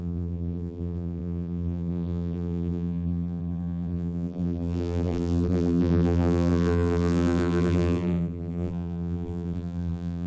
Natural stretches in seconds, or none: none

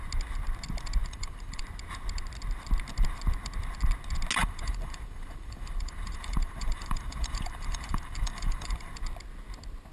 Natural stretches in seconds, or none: 0.0-1.0; 1.6-4.4; 8.9-9.9

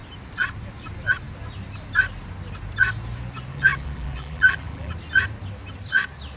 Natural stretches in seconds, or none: 0.0-3.5; 4.9-6.4

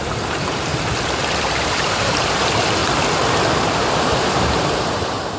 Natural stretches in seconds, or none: 0.7-1.6; 2.8-3.9

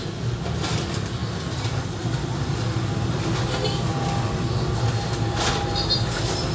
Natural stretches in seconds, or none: 0.0-6.5

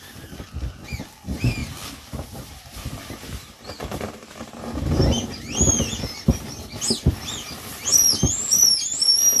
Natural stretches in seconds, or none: 0.0-3.8; 5.0-9.4